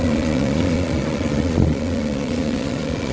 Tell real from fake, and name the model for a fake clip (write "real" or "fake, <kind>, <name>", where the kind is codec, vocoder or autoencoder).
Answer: fake, vocoder, Vocos